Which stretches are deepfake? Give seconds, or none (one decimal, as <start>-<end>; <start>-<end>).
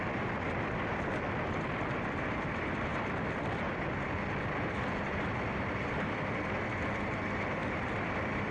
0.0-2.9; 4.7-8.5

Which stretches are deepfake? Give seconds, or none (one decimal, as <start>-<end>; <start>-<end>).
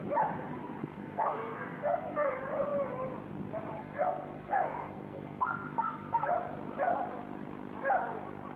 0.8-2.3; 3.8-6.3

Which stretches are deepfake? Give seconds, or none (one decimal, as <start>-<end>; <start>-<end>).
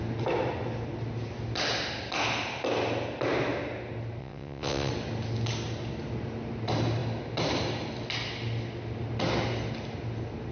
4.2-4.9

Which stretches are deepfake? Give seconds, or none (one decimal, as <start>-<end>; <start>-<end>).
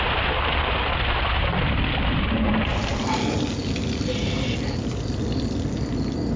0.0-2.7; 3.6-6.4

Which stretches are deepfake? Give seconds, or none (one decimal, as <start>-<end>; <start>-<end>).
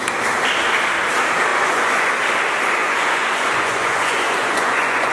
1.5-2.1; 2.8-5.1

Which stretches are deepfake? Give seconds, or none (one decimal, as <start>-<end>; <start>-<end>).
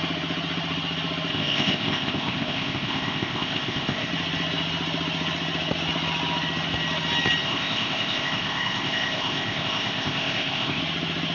1.3-4.1; 7.4-10.8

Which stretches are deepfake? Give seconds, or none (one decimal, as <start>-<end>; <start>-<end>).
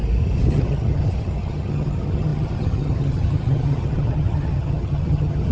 0.5-5.5